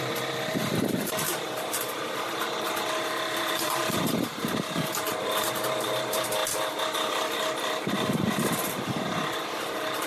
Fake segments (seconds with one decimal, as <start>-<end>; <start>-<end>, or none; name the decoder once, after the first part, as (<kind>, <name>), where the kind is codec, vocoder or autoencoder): 0.0-6.4 (vocoder, BigVGAN v2); 7.1-10.1